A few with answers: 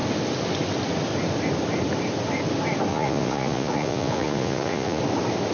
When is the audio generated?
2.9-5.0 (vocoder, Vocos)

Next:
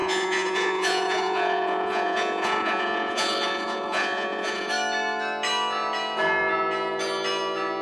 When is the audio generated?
0.0-4.7 (vocoder, Vocos)

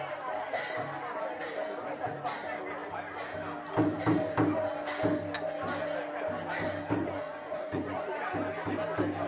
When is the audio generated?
7.0-8.1 (vocoder, Vocos)

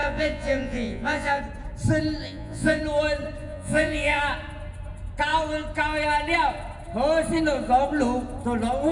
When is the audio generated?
0.0-1.4 (vocoder, Vocos); 2.2-2.8; 3.4-4.2

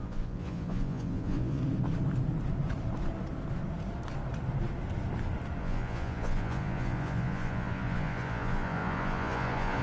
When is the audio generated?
0.0-1.6 (vocoder, Vocos); 5.6-9.8

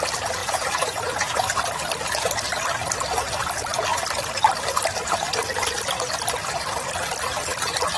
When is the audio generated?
0.4-1.4 (vocoder, Vocos)